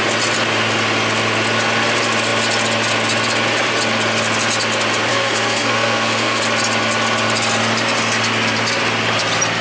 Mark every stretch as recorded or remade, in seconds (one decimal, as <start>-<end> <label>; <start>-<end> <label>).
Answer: 0.0-5.1 recorded; 5.1-6.4 remade; 6.4-9.6 recorded